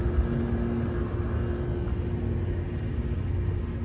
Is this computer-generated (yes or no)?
no